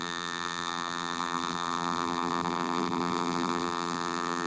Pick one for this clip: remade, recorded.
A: remade